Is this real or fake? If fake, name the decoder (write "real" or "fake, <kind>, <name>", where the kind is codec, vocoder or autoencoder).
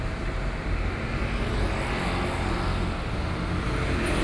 real